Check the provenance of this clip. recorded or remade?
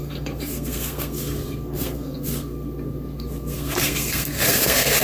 remade